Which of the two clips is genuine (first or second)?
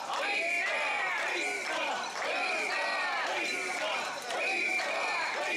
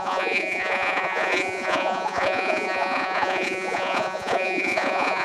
first